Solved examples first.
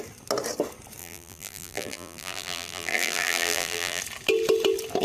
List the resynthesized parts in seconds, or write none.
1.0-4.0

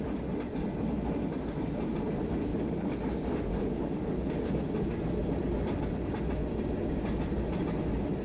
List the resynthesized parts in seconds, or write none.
2.5-3.0; 3.5-4.5

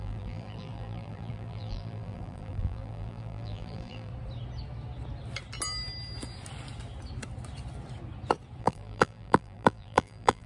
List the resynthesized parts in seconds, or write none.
0.0-4.1; 8.6-10.5

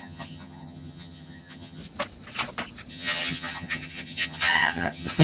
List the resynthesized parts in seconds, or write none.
0.0-1.8; 2.9-5.2

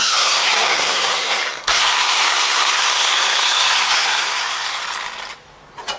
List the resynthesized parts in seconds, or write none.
0.0-4.8

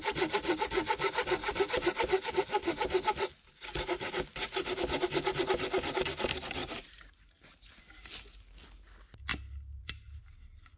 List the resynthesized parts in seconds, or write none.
1.4-2.3; 6.6-7.8; 9.3-10.2